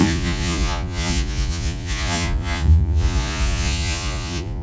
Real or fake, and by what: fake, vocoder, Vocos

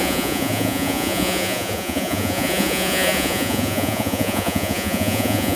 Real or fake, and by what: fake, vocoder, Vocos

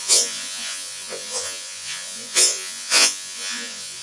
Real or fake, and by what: fake, vocoder, Vocos